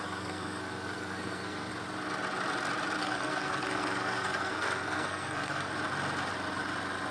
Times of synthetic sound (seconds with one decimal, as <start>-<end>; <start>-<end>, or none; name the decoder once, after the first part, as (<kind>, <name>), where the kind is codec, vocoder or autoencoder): 0.0-1.7 (codec, SNAC); 3.0-5.7